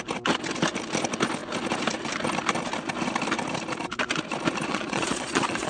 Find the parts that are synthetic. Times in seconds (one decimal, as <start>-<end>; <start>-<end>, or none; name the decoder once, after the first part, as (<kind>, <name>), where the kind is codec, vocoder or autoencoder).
4.7-5.7 (vocoder, Vocos)